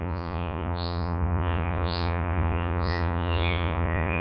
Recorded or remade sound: remade